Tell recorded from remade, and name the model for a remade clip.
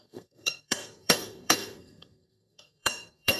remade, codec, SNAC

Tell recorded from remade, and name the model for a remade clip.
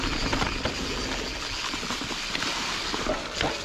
recorded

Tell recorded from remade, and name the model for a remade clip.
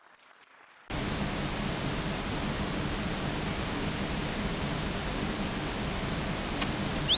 recorded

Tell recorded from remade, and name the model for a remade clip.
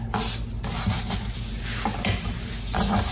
recorded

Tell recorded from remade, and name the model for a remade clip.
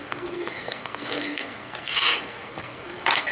remade, codec, SNAC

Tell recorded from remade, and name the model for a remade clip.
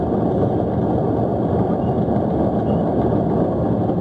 recorded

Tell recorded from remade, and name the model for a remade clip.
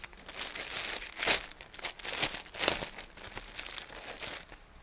recorded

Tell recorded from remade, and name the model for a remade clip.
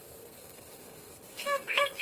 remade, codec, SNAC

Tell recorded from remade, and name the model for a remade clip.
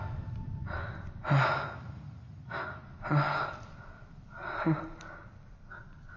recorded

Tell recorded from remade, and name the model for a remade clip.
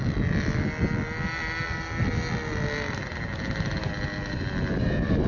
recorded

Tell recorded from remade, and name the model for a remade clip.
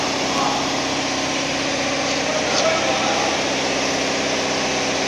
recorded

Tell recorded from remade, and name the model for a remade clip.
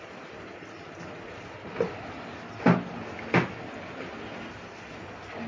recorded